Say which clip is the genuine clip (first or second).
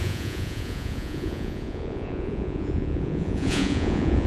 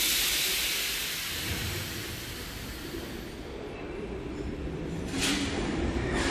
second